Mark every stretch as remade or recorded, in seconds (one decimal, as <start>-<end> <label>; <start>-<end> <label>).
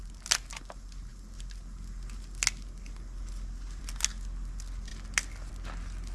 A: 0.0-6.1 recorded